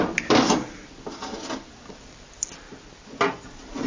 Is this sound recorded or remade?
recorded